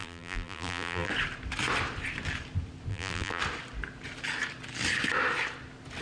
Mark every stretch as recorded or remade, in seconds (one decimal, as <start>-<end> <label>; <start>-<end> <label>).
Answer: 0.0-1.1 remade; 1.1-2.9 recorded; 2.9-3.4 remade; 3.4-6.0 recorded